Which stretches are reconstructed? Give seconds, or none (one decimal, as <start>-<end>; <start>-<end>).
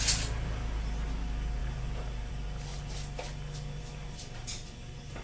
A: none